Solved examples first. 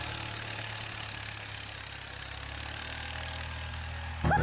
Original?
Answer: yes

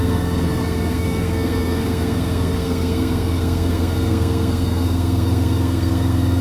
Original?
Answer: no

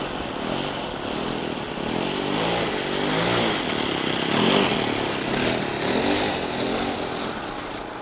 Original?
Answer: yes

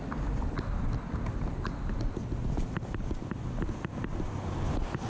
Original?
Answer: yes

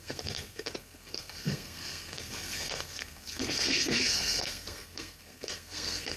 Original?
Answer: no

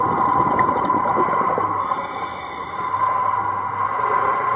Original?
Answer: yes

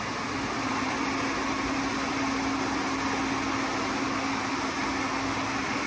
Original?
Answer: yes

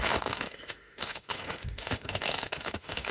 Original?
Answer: no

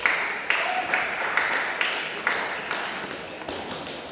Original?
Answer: yes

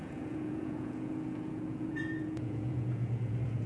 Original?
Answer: no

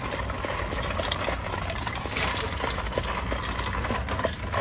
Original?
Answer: yes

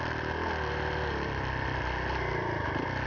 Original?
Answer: yes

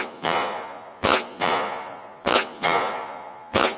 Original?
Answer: no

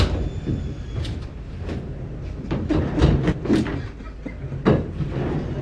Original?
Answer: yes